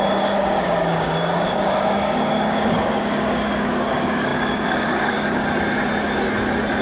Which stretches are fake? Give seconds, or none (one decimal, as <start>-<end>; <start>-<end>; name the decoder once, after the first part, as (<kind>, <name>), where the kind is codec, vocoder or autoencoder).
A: 0.0-5.4 (codec, DAC)